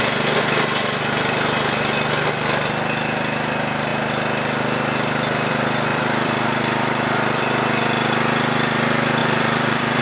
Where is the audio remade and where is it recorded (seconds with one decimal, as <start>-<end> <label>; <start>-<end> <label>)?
0.0-5.9 recorded; 5.9-7.4 remade; 7.4-9.2 recorded; 9.2-10.0 remade